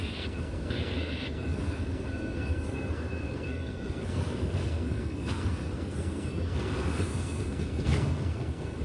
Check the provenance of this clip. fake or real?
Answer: fake